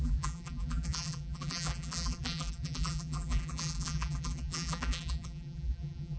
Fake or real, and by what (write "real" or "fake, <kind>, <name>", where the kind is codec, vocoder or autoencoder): fake, vocoder, BigVGAN v2